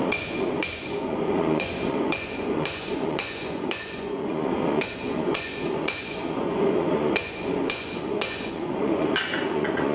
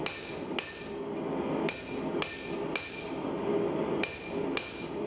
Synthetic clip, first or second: first